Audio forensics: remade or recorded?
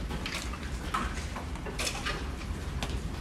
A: recorded